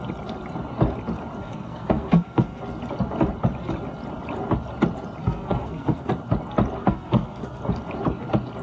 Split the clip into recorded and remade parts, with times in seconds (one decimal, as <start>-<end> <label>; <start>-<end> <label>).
0.0-1.4 recorded; 1.4-2.6 remade; 2.6-5.2 recorded; 5.2-6.1 remade; 6.1-6.8 recorded; 6.8-7.6 remade; 7.6-8.6 recorded

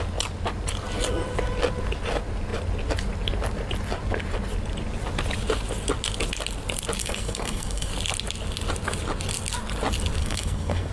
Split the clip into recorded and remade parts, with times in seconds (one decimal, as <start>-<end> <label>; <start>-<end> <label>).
0.0-7.0 recorded; 7.0-7.9 remade; 7.9-10.2 recorded; 10.2-10.9 remade

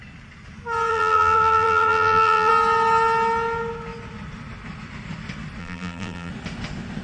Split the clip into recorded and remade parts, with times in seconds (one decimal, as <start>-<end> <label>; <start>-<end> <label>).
0.0-0.9 recorded; 0.9-2.5 remade; 2.5-5.6 recorded; 5.6-6.3 remade; 6.3-7.0 recorded

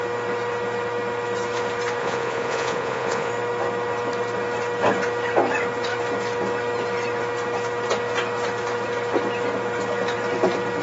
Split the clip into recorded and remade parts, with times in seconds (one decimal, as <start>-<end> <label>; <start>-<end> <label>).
0.0-2.0 recorded; 2.0-3.3 remade; 3.3-10.8 recorded

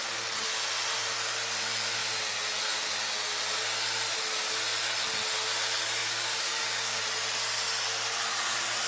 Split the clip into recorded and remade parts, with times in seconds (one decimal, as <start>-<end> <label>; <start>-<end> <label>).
0.0-6.0 recorded; 6.0-7.0 remade; 7.0-8.9 recorded

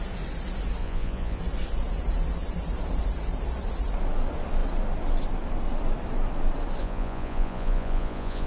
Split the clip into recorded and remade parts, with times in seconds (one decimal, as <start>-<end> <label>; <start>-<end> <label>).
0.0-0.8 recorded; 0.8-1.4 remade; 1.4-6.8 recorded; 6.8-8.5 remade

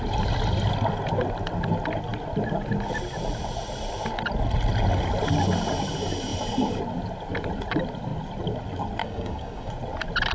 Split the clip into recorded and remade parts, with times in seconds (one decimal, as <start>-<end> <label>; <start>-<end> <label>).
0.0-9.0 recorded; 9.0-9.7 remade; 9.7-10.3 recorded

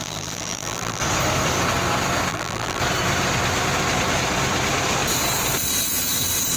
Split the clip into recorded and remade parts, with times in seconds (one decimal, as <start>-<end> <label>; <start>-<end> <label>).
0.0-1.0 remade; 1.0-2.3 recorded; 2.3-2.8 remade; 2.8-6.6 recorded